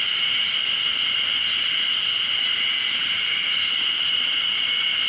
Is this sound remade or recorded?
remade